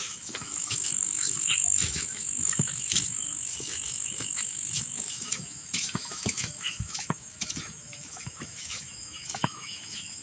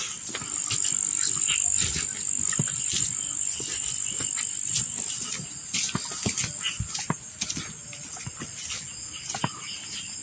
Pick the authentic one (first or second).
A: second